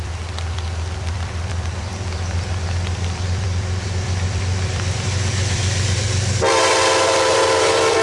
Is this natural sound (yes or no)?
no